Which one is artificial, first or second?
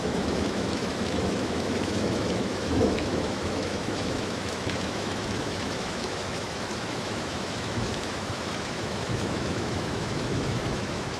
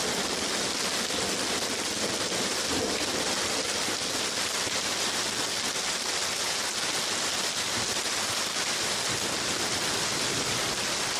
first